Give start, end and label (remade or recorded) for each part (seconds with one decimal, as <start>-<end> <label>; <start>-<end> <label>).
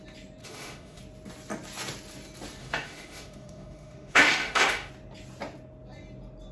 0.0-0.4 recorded; 0.4-1.0 remade; 1.0-2.6 recorded; 2.6-4.9 remade; 4.9-6.5 recorded